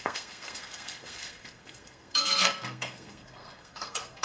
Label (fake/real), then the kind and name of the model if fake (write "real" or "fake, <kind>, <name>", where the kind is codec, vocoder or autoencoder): fake, codec, SNAC